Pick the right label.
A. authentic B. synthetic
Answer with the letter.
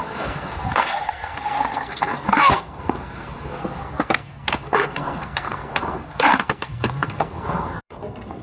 B